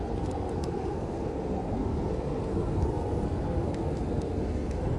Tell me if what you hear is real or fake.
fake